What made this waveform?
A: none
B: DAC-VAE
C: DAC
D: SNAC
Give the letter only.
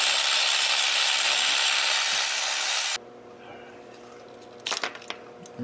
A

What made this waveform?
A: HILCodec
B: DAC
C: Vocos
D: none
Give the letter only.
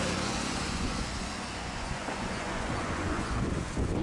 C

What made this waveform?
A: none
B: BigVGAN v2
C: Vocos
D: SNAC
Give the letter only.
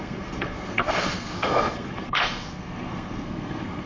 D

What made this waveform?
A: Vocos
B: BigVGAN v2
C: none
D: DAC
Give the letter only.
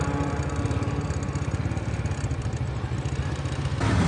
C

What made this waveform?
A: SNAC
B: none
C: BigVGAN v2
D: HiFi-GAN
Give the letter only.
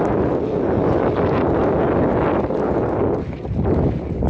B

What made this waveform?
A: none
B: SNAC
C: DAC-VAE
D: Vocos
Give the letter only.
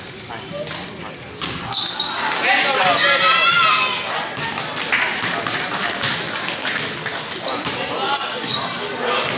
A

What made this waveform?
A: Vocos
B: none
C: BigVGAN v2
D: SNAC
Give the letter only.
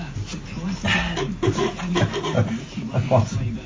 B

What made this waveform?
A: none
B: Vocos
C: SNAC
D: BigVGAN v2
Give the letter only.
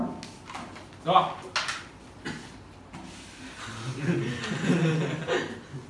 A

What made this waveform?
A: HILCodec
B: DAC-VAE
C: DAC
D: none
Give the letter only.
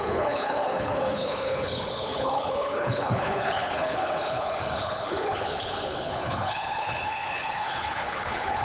A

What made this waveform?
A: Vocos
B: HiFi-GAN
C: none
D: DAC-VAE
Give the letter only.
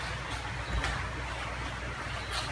C